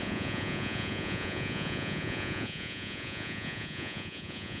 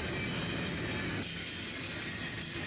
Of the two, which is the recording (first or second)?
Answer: second